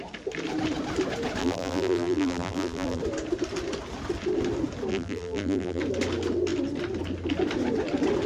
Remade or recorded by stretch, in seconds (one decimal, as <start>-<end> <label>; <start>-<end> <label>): 0.0-1.4 recorded; 1.4-3.0 remade; 3.0-4.9 recorded; 4.9-5.8 remade; 5.8-8.3 recorded

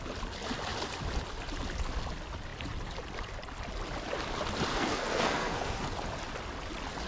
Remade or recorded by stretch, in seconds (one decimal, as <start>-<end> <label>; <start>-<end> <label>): 0.0-4.7 recorded; 4.7-5.8 remade; 5.8-7.1 recorded